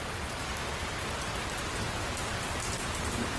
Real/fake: real